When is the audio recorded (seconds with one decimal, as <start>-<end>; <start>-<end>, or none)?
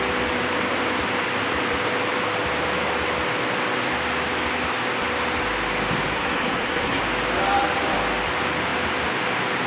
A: 0.0-6.1; 7.0-9.7